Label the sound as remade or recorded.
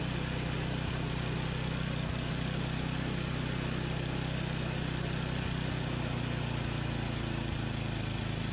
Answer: recorded